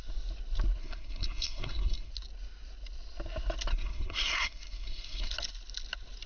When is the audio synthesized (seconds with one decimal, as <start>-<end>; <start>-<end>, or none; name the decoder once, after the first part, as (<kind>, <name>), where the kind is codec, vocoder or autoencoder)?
0.8-2.1 (codec, SNAC); 3.7-5.3